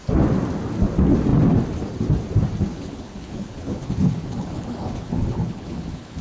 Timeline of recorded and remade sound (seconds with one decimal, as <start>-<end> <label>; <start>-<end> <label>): 0.0-2.7 recorded; 2.7-6.2 remade